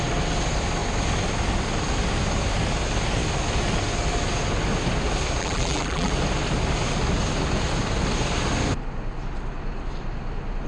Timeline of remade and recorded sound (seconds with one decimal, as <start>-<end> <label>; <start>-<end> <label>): 0.0-5.4 recorded; 5.4-6.1 remade; 6.1-10.7 recorded